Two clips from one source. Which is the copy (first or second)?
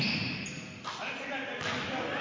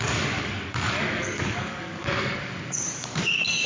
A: second